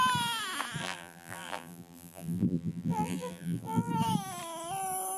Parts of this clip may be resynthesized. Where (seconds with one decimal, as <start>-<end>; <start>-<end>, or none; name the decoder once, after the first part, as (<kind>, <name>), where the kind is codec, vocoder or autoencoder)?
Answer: 0.8-3.9 (vocoder, BigVGAN v2)